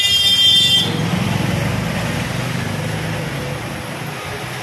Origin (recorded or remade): recorded